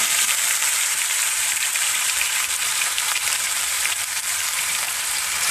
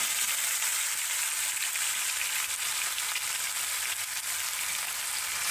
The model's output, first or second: first